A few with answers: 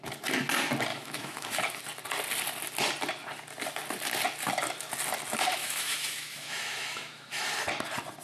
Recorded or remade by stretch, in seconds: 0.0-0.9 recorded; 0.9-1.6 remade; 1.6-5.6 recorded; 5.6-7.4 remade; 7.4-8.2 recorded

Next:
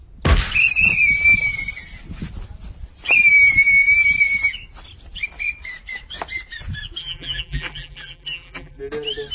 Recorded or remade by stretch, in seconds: 0.0-7.0 recorded; 7.0-8.8 remade; 8.8-9.3 recorded

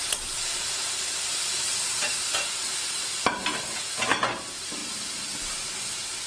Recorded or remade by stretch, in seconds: 0.0-6.3 recorded

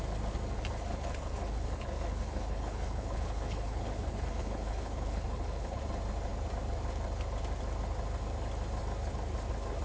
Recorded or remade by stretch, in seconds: 0.0-0.9 recorded; 0.9-5.8 remade; 5.8-9.8 recorded

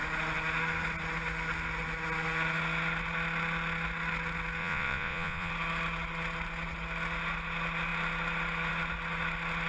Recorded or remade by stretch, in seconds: 0.0-4.6 recorded; 4.6-5.5 remade; 5.5-9.7 recorded

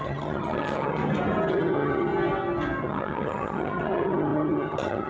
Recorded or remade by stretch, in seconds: 0.0-1.0 remade; 1.0-1.5 recorded; 1.5-2.1 remade; 2.1-2.8 recorded; 2.8-5.1 remade

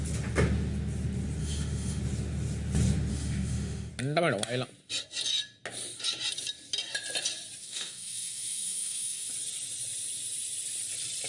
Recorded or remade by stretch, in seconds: 0.0-1.4 recorded; 1.4-2.0 remade; 2.0-3.1 recorded; 3.1-3.9 remade; 3.9-7.6 recorded; 7.6-9.3 remade; 9.3-11.3 recorded

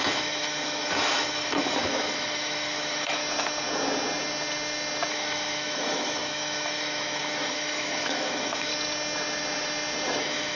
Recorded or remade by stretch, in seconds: 0.0-3.2 remade; 3.2-5.1 recorded; 5.1-8.7 remade; 8.7-10.2 recorded; 10.2-10.6 remade